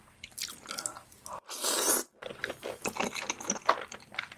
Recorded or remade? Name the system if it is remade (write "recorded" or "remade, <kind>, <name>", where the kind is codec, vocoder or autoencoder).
recorded